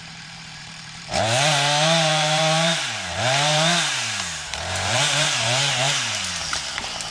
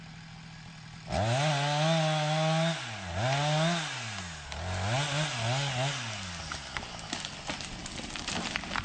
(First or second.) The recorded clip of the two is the second